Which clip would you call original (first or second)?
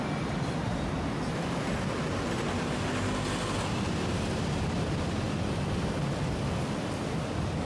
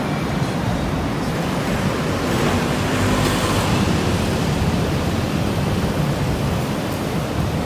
first